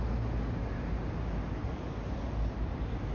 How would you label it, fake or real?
real